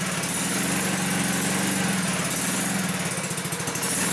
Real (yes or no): yes